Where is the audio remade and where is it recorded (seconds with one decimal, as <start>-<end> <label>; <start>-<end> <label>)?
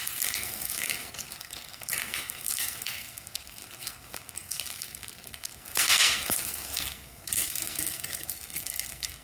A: 0.0-9.2 remade